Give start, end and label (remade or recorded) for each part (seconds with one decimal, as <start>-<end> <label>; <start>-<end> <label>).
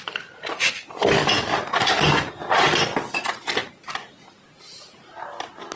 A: 0.0-5.8 recorded